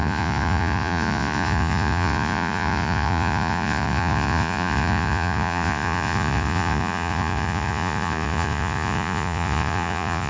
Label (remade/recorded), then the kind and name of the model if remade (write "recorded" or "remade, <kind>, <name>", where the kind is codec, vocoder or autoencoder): remade, vocoder, Vocos